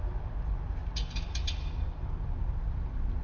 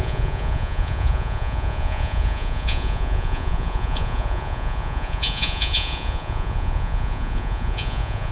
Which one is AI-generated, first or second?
second